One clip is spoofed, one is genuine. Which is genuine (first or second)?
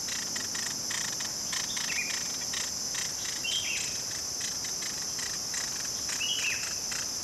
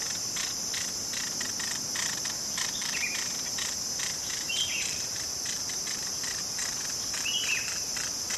first